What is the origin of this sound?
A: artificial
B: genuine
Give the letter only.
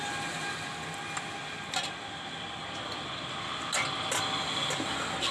B